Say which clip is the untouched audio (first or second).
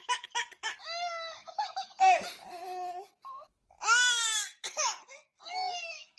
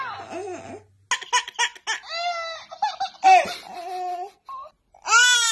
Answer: second